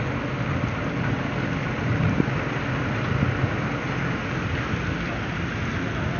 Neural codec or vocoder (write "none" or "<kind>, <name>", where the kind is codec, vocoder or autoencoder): none